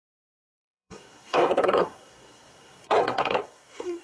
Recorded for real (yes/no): no